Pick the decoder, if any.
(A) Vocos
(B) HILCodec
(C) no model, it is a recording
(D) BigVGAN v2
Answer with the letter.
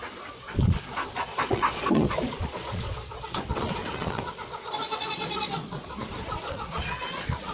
A